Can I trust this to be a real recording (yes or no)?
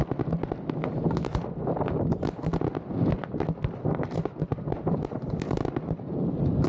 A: yes